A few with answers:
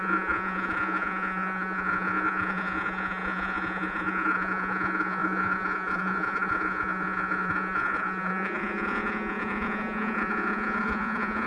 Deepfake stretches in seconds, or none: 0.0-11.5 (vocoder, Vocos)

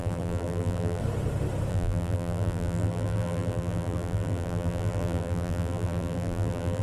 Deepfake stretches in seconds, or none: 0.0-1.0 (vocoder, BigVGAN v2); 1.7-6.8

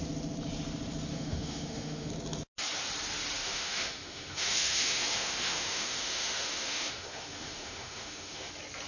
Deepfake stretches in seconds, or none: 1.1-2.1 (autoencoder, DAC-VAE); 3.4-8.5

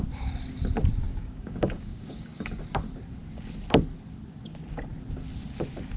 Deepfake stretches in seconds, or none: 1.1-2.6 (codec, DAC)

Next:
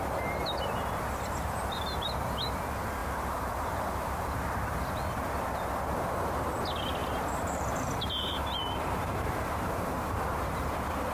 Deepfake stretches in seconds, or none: 3.0-4.1 (vocoder, BigVGAN v2); 7.0-10.2